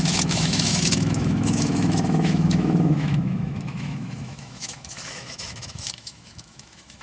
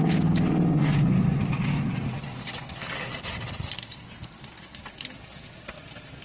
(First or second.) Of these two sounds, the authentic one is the second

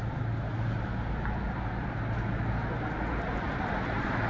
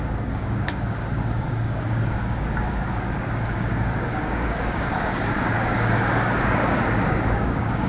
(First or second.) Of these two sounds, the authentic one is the first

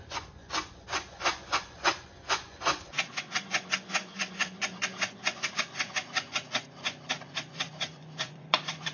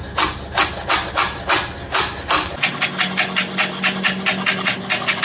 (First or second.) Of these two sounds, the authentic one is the second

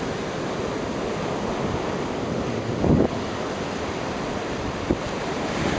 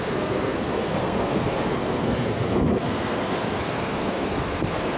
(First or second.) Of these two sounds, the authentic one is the first